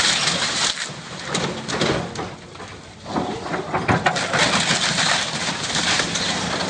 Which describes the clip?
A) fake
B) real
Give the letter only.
B